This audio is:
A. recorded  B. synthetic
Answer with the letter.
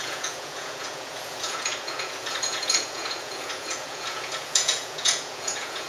B